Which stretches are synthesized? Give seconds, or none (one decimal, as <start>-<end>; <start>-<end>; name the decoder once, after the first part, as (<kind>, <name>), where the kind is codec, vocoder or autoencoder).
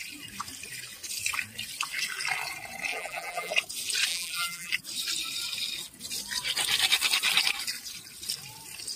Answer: 2.9-3.5 (vocoder, BigVGAN v2); 4.1-4.7